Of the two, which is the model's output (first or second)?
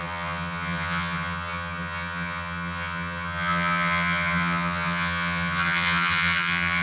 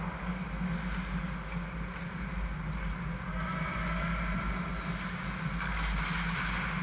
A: first